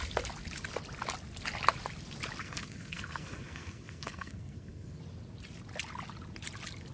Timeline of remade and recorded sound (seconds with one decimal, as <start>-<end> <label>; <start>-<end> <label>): 0.0-2.4 recorded; 2.4-5.0 remade; 5.0-6.9 recorded